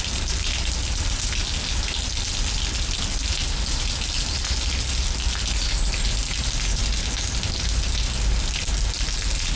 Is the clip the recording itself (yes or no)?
yes